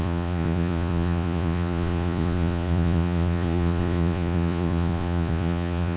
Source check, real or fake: fake